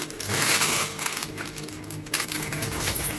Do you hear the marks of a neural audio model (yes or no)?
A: yes